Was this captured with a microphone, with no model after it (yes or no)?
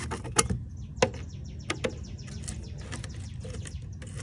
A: yes